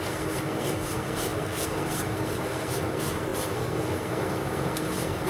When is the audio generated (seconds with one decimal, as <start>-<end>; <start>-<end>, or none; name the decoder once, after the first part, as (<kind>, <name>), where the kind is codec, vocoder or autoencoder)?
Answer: 0.0-5.3 (codec, SNAC)